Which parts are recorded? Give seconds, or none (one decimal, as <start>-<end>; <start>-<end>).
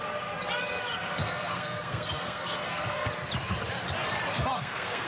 0.0-1.2; 3.1-4.3